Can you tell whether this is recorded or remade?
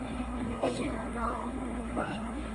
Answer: remade